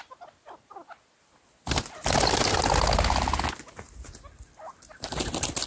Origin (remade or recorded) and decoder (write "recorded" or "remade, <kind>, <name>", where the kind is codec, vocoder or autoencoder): recorded